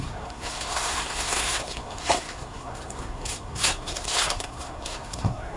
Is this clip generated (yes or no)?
yes